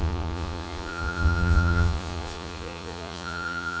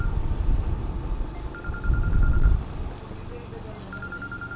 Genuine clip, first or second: second